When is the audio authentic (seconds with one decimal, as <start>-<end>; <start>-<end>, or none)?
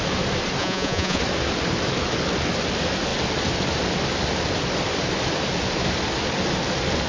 0.0-0.6; 1.2-7.1